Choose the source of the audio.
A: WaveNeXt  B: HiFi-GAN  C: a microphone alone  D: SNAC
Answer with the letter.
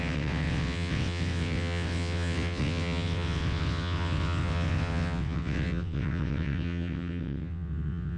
A